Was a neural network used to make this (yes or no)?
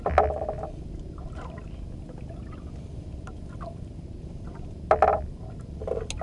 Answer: no